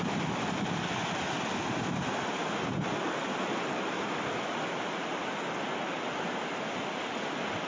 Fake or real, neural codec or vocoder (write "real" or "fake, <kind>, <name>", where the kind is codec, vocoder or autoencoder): real